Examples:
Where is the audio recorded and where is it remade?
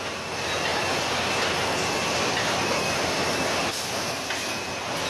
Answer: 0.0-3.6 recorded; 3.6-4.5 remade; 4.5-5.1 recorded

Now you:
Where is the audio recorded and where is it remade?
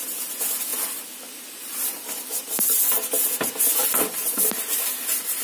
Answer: 0.0-5.4 recorded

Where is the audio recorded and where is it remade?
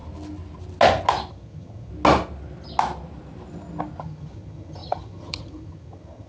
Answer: 0.0-1.3 recorded; 1.3-1.9 remade; 1.9-4.0 recorded; 4.0-6.3 remade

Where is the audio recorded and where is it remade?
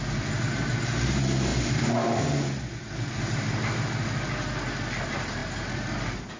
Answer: 0.0-6.4 recorded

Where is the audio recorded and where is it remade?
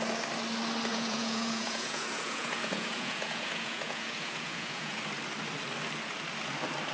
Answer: 0.0-0.9 recorded; 0.9-5.0 remade; 5.0-6.9 recorded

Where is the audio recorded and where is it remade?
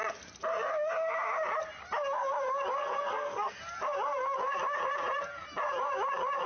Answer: 0.0-2.8 recorded; 2.8-3.6 remade; 3.6-6.5 recorded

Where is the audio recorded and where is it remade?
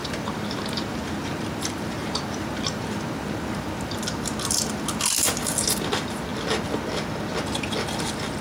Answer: 0.0-3.9 remade; 3.9-8.4 recorded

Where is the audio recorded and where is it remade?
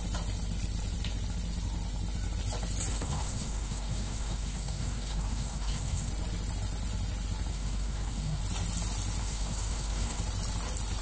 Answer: 0.0-2.9 recorded; 2.9-6.1 remade; 6.1-7.5 recorded; 7.5-8.4 remade; 8.4-9.2 recorded; 9.2-10.2 remade; 10.2-11.0 recorded